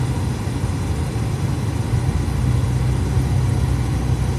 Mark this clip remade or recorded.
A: recorded